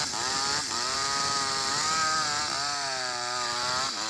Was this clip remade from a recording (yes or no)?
no